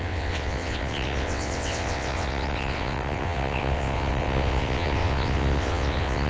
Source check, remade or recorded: remade